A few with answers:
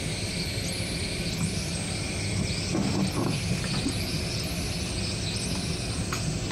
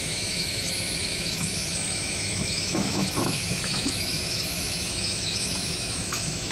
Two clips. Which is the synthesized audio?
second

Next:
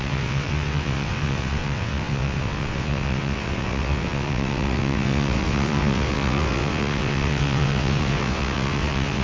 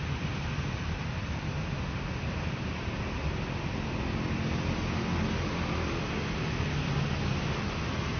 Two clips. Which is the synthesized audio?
first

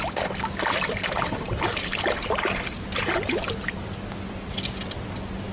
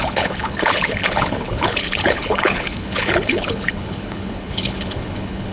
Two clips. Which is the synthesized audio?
second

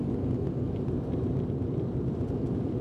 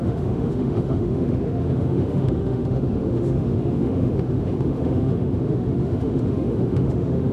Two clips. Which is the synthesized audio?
second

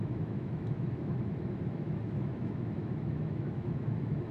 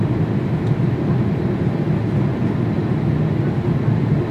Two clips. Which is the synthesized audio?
first